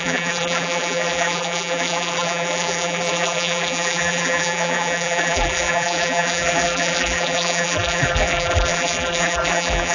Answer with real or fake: fake